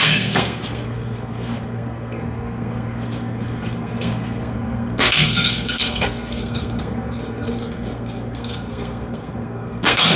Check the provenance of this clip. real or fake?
fake